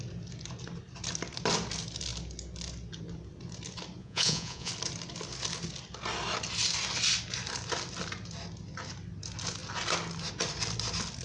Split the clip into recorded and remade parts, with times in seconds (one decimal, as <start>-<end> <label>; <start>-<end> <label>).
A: 0.0-4.0 recorded; 4.0-4.7 remade; 4.7-11.2 recorded